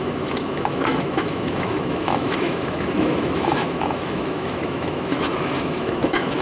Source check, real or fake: fake